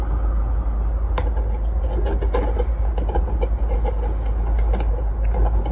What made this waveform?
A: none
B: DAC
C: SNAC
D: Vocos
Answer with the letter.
A